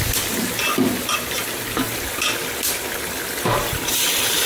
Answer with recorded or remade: recorded